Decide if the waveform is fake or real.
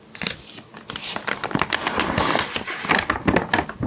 real